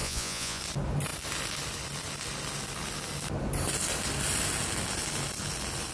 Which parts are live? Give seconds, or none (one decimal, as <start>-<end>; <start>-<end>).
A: 0.6-5.9